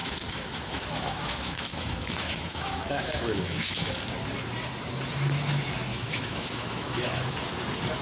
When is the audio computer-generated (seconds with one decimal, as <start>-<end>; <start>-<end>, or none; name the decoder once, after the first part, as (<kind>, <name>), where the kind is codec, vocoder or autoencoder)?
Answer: 0.0-3.9 (autoencoder, DAC-VAE); 5.9-7.3